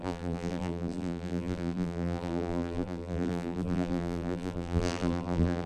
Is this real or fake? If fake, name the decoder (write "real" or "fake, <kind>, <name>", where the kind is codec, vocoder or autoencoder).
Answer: fake, vocoder, BigVGAN v2